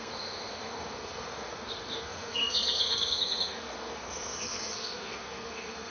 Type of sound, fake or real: fake